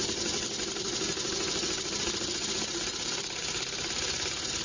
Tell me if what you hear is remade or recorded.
recorded